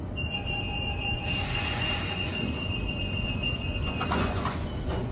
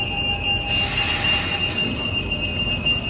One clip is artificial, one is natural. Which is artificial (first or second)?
first